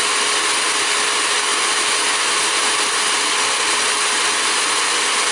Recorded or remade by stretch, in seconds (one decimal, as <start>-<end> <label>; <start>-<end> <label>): 0.0-5.3 recorded